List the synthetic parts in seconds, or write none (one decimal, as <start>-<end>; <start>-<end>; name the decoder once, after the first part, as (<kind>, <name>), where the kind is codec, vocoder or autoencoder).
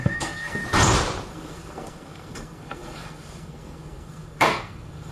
0.0-0.6 (codec, SNAC); 1.3-5.1